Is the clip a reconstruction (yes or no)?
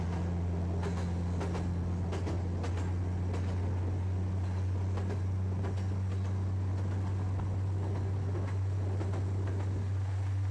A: no